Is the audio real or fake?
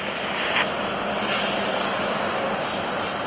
real